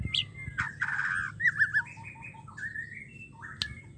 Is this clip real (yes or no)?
yes